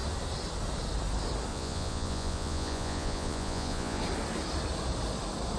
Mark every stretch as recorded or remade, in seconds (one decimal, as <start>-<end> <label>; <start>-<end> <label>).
0.0-1.5 recorded; 1.5-4.0 remade; 4.0-5.6 recorded